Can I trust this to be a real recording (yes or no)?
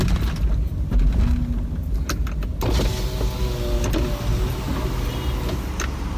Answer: yes